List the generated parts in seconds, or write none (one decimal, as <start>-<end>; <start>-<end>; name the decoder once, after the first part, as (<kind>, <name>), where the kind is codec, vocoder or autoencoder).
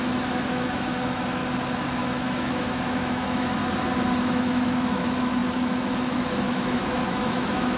0.0-1.4 (autoencoder, DAC-VAE); 2.0-3.6; 4.2-7.8